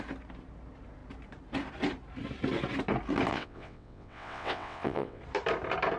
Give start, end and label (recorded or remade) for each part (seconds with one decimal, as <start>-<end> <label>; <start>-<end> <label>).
0.0-3.3 recorded; 3.3-5.2 remade; 5.2-6.0 recorded